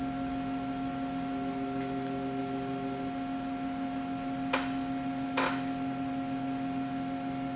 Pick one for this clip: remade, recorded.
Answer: recorded